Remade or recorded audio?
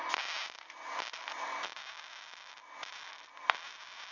recorded